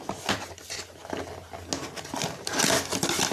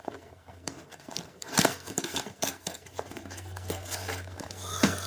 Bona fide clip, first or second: first